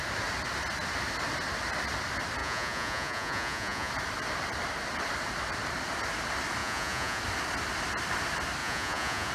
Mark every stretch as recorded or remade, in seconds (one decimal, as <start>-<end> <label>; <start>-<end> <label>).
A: 0.0-2.4 recorded; 2.4-3.9 remade; 3.9-6.6 recorded; 6.6-7.2 remade; 7.2-8.6 recorded; 8.6-9.3 remade